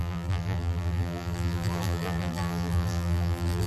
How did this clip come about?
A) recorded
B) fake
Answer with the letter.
B